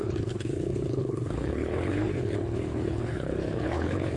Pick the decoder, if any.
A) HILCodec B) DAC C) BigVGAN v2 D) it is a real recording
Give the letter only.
A